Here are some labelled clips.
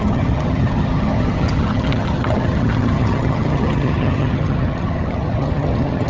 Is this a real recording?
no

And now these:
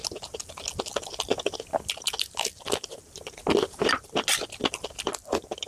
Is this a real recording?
yes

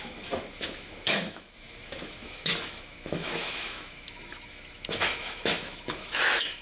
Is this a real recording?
no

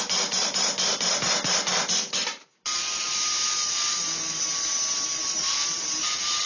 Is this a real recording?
yes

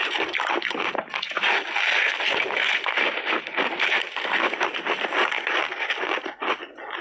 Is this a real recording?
yes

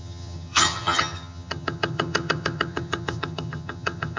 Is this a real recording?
no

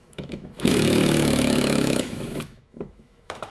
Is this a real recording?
no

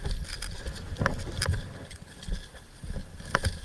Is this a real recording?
yes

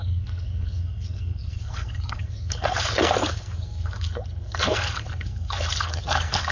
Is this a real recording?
no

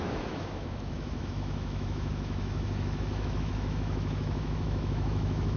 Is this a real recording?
no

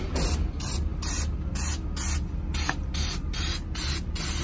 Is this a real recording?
yes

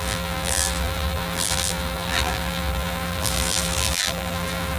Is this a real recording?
no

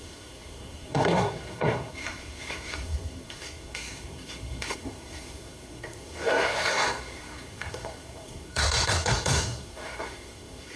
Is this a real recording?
no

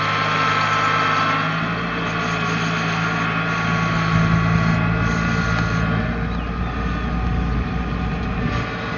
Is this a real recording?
yes